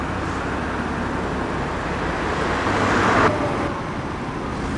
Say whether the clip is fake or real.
real